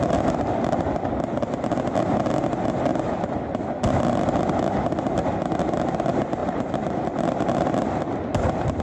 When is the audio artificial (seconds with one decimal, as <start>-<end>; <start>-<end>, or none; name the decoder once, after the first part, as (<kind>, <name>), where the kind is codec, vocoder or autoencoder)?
6.4-6.9 (vocoder, BigVGAN v2)